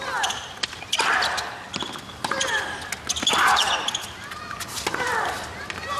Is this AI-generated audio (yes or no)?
no